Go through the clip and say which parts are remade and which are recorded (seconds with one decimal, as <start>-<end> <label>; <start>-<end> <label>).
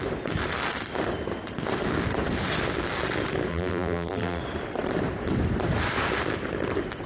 0.0-3.5 recorded; 3.5-4.4 remade; 4.4-7.1 recorded